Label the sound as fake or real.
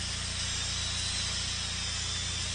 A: real